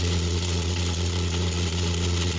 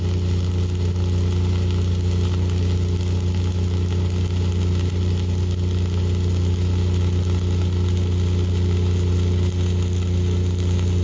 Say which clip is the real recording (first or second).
second